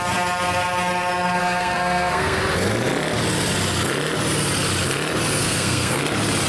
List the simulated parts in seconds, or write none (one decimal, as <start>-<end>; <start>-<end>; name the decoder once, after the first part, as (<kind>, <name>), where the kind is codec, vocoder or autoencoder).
1.4-2.4 (codec, SNAC); 5.4-6.0